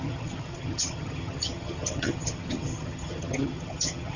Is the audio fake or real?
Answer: fake